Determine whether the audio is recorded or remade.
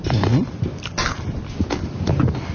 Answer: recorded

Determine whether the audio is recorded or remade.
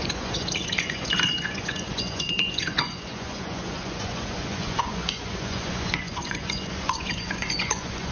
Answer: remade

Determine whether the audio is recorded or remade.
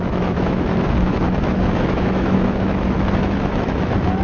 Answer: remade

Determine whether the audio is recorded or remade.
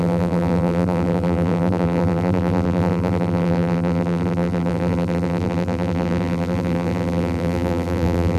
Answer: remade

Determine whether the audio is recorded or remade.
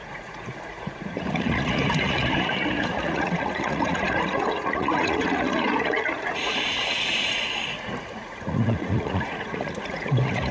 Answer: remade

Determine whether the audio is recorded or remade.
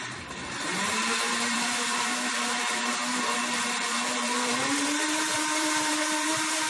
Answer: remade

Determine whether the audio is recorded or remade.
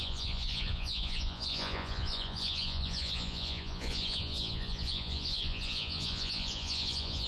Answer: remade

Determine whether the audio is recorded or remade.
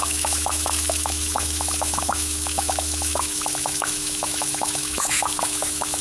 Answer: remade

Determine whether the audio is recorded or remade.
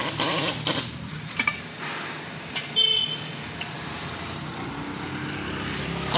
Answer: recorded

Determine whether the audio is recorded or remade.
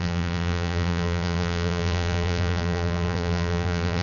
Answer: remade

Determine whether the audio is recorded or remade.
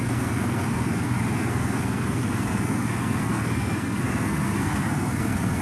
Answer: remade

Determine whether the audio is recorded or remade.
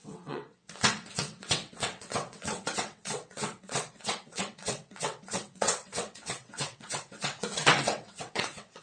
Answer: remade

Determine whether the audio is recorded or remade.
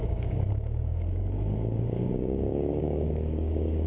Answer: remade